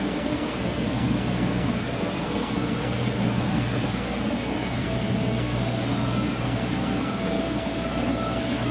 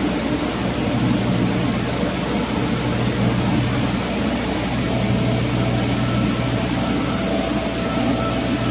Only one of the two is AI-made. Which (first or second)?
first